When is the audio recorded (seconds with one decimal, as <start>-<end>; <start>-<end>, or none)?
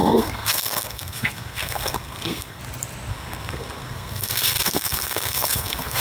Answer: 2.6-3.1